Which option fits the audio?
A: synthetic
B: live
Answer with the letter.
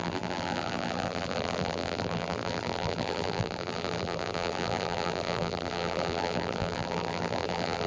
A